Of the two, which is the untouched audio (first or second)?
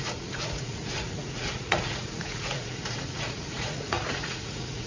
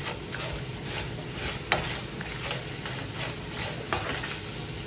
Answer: second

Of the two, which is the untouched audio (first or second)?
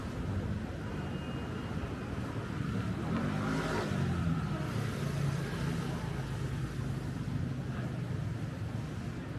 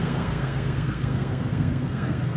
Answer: first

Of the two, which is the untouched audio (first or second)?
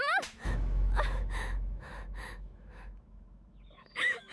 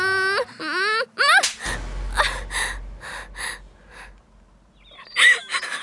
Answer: second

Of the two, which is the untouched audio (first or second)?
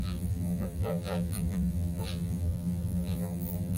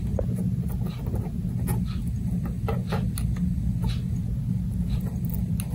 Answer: second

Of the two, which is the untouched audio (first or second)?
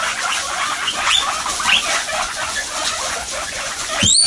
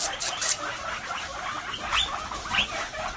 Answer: second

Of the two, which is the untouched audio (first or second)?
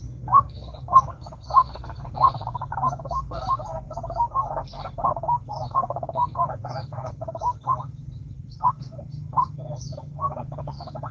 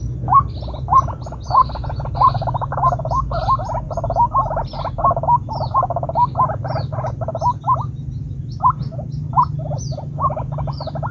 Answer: second